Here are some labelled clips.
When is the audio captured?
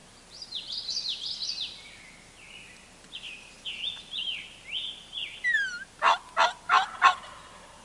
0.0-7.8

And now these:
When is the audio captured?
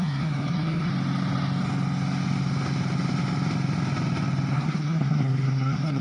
0.9-4.5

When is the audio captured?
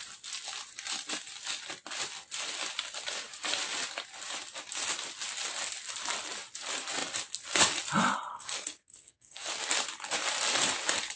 0.0-8.3; 9.5-11.2